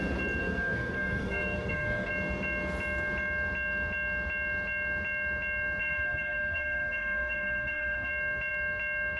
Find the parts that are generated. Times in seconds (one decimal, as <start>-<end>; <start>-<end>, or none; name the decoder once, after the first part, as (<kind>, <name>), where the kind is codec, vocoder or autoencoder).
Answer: 0.4-2.1 (codec, SNAC); 5.8-8.1